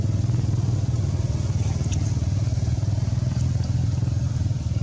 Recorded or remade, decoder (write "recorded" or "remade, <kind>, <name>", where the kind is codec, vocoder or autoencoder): recorded